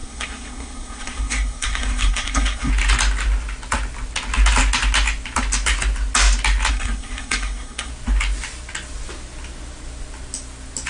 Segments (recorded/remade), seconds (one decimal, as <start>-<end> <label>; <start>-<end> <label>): 0.0-2.7 remade; 2.7-6.7 recorded; 6.7-7.9 remade; 7.9-10.9 recorded